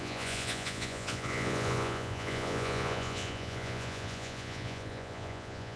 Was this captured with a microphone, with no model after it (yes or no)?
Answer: no